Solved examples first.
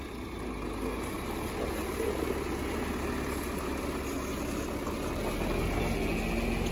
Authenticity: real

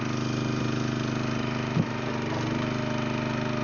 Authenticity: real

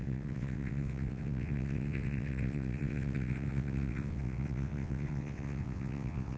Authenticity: fake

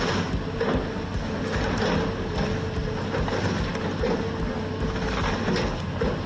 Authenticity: real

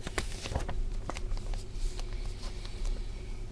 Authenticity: real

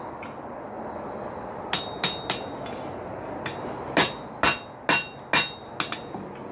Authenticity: real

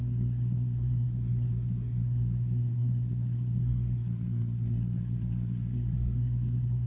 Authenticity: fake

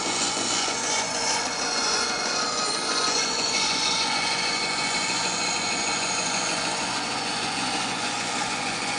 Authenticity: fake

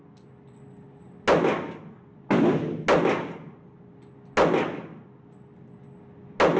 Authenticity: real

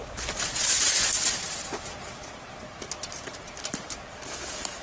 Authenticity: fake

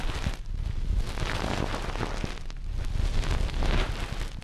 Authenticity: real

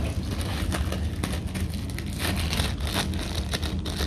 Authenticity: real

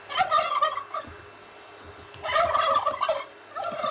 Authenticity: real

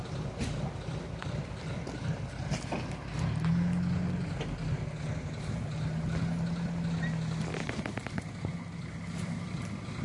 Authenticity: real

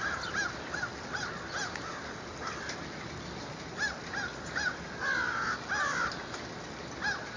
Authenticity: real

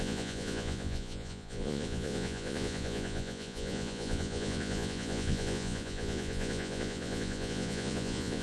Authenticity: fake